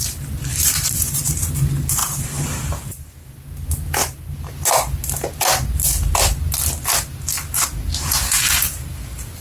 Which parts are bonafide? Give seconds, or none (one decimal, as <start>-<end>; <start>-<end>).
0.0-0.5; 1.2-2.0; 2.9-4.0; 4.5-9.4